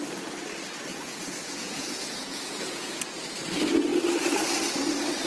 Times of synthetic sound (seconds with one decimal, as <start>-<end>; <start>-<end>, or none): 0.9-3.2